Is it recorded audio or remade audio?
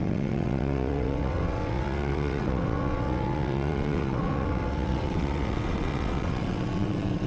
remade